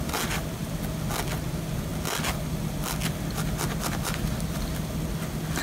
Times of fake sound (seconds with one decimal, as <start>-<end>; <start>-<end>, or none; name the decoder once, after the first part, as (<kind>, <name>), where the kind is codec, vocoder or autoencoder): none